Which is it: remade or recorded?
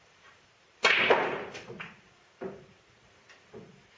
remade